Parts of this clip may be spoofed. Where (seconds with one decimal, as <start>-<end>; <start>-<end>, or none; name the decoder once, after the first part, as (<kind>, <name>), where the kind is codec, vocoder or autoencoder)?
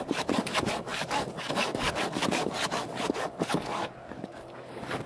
0.0-5.1 (codec, DAC)